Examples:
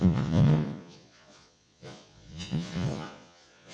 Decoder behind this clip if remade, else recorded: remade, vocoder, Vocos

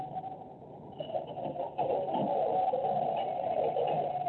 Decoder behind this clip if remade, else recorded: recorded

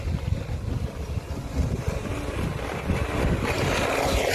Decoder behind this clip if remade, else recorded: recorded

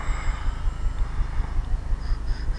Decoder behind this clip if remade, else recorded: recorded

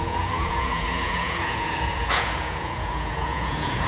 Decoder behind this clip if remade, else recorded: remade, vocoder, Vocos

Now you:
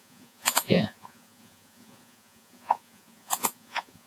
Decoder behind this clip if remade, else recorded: remade, vocoder, Vocos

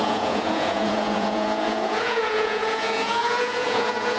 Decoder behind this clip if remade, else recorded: remade, vocoder, Vocos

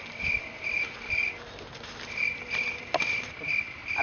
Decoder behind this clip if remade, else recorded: recorded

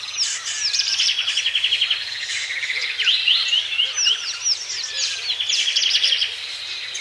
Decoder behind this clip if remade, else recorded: recorded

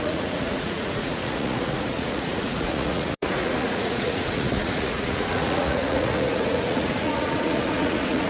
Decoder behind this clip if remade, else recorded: remade, vocoder, Vocos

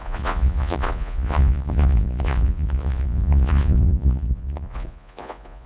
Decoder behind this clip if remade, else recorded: remade, vocoder, Vocos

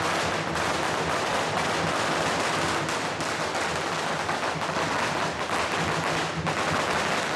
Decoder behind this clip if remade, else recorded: recorded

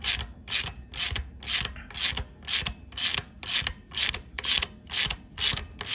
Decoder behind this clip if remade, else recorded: recorded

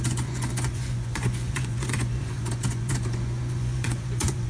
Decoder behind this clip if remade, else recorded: remade, vocoder, Vocos